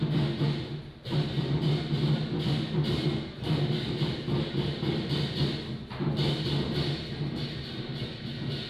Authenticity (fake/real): real